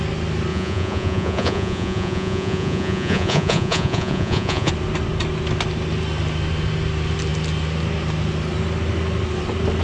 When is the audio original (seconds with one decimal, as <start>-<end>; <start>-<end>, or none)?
0.0-0.5; 4.7-9.8